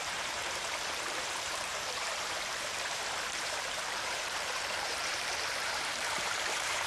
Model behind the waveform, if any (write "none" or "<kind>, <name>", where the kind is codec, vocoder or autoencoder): vocoder, BigVGAN v2